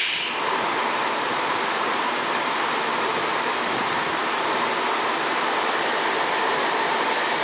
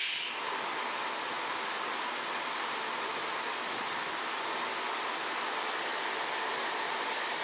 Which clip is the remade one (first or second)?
first